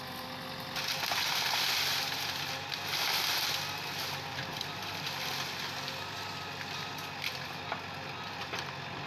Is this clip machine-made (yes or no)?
no